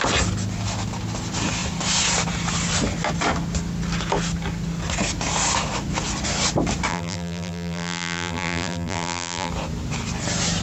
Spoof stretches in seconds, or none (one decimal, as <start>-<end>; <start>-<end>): 6.9-9.5

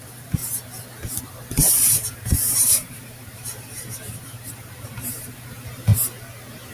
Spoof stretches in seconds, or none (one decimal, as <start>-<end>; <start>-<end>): 0.0-0.4; 1.2-5.9

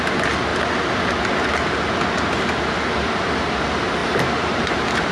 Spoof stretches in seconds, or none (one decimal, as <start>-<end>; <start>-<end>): 4.0-5.1

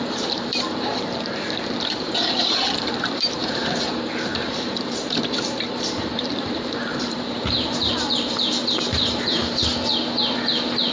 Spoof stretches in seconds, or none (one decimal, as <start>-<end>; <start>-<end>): 0.0-3.6; 4.3-9.7

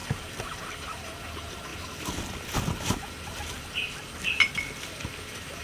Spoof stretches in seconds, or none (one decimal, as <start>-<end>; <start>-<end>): none

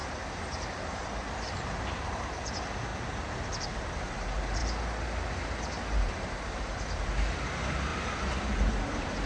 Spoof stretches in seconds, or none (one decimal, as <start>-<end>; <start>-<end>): 0.0-2.9; 4.0-4.6; 5.3-9.3

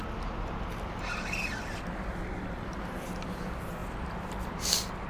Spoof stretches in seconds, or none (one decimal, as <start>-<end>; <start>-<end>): none